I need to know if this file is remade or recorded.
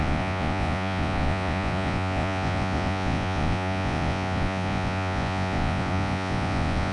remade